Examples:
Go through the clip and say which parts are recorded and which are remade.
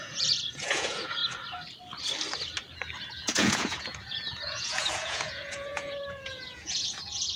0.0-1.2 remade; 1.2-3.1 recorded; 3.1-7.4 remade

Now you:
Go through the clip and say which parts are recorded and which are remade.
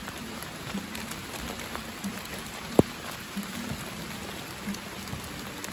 0.0-0.8 remade; 0.8-2.1 recorded; 2.1-3.7 remade; 3.7-5.7 recorded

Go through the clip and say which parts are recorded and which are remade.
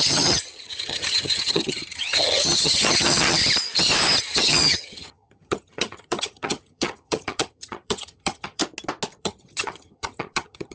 0.0-3.4 remade; 3.4-4.2 recorded; 4.2-8.6 remade; 8.6-9.2 recorded; 9.2-10.7 remade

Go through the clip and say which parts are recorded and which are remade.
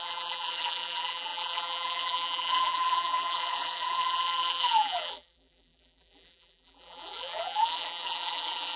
0.0-8.8 remade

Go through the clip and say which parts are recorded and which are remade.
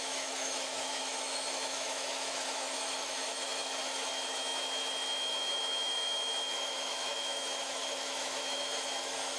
0.0-9.4 remade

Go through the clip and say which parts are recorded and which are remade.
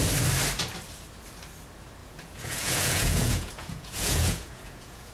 0.0-2.0 recorded; 2.0-5.1 remade